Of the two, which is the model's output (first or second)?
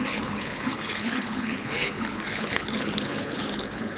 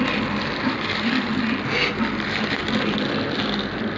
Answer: first